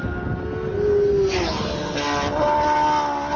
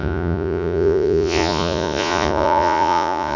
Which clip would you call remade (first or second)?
second